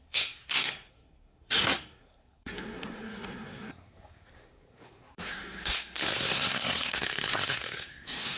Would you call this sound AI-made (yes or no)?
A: yes